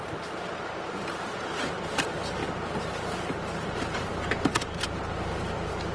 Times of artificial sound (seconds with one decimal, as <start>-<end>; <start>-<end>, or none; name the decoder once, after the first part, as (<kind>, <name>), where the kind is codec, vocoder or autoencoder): none